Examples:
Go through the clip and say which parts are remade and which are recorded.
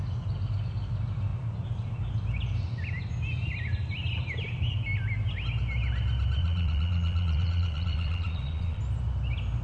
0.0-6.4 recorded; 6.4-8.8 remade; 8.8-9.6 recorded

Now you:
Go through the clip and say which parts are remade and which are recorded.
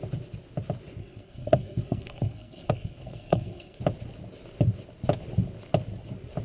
0.0-1.0 recorded; 1.0-3.8 remade; 3.8-6.4 recorded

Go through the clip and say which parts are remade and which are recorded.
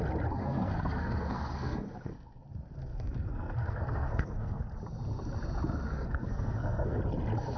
0.0-0.4 recorded; 0.4-2.4 remade; 2.4-2.9 recorded; 2.9-4.6 remade; 4.6-5.9 recorded; 5.9-7.0 remade; 7.0-7.6 recorded